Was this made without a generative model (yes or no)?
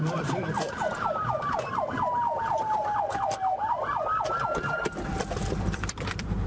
no